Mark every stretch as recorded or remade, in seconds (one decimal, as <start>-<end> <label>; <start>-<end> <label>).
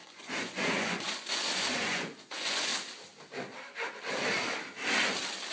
0.0-2.7 remade; 2.7-5.5 recorded